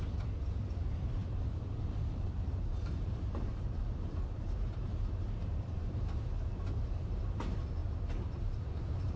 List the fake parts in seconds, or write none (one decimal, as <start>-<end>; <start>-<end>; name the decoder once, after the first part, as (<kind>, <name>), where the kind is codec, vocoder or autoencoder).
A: 0.0-7.8 (vocoder, BigVGAN v2); 8.4-9.2